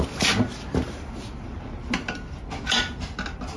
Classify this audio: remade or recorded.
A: recorded